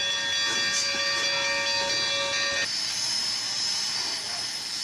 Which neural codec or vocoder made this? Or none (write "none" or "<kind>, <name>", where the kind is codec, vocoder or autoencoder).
none